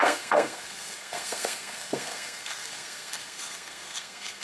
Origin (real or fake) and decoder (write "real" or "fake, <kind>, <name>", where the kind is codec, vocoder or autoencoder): fake, codec, SNAC